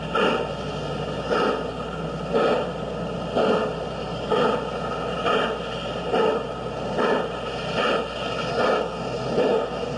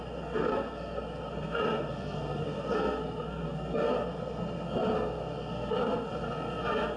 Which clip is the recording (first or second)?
first